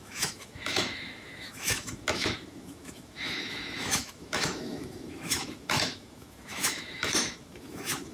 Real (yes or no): no